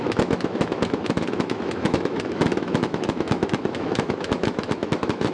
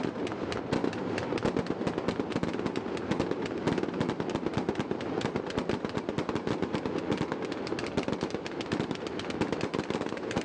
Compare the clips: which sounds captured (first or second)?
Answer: second